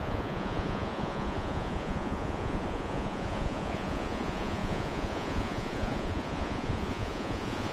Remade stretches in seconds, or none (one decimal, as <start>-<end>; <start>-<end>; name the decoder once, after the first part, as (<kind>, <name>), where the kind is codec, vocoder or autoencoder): 0.0-7.7 (vocoder, Vocos)